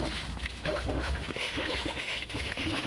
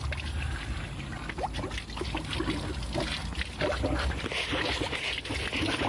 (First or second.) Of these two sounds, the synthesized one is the first